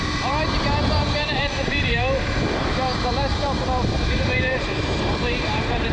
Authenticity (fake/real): fake